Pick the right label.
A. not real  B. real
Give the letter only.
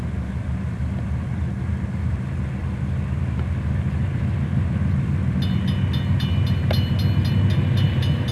B